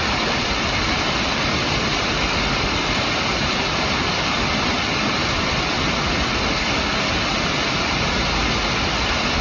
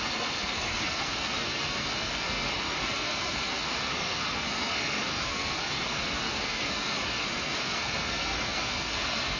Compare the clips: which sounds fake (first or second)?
second